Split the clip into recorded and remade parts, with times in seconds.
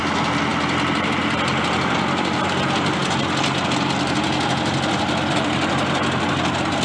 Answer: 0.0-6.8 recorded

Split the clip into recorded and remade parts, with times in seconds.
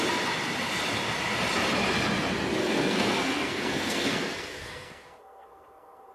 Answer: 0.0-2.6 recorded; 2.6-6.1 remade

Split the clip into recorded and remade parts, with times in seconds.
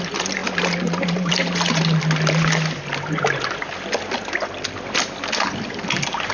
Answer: 0.0-6.3 recorded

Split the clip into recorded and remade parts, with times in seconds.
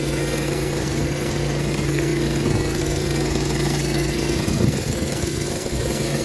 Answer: 0.0-6.2 remade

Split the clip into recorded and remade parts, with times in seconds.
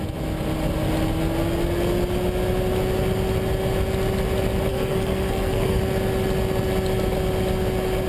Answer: 0.0-4.7 recorded; 4.7-5.8 remade; 5.8-8.1 recorded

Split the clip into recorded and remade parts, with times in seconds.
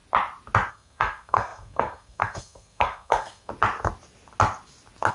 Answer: 0.0-0.7 recorded; 0.7-3.5 remade; 3.5-5.1 recorded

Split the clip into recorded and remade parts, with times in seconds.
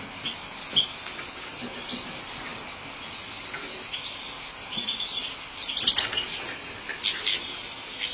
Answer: 0.0-8.1 recorded